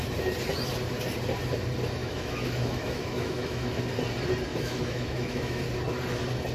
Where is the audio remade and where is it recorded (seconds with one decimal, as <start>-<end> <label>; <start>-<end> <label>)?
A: 0.0-2.0 recorded; 2.0-3.8 remade; 3.8-4.5 recorded; 4.5-5.6 remade; 5.6-6.5 recorded